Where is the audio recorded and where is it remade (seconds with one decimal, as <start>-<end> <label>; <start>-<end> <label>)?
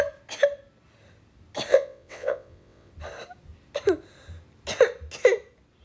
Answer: 0.0-1.7 recorded; 1.7-2.9 remade; 2.9-5.8 recorded